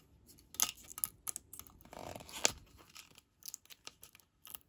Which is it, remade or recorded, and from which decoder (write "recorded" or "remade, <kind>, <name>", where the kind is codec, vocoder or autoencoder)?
recorded